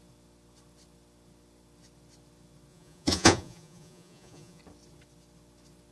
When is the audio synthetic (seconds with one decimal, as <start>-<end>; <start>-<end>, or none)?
2.7-4.6